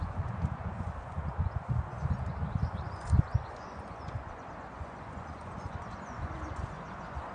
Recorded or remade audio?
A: remade